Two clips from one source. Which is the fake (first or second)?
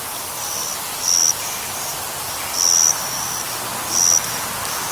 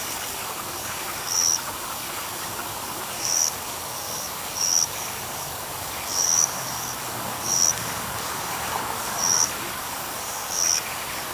second